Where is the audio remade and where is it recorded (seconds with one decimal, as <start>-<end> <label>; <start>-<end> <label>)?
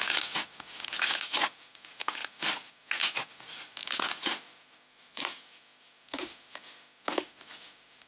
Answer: 0.0-4.9 recorded; 4.9-5.4 remade; 5.4-8.1 recorded